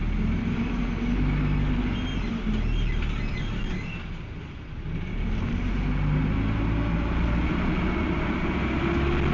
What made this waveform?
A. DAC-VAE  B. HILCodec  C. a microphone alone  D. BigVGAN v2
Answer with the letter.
C